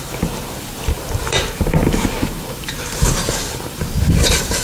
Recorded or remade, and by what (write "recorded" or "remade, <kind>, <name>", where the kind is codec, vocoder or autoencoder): remade, vocoder, BigVGAN v2